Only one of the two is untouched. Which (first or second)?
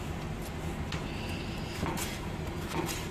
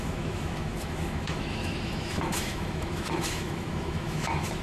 first